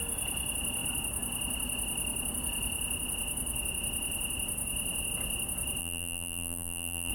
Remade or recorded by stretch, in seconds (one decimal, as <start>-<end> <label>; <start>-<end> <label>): 0.0-5.8 recorded; 5.8-7.1 remade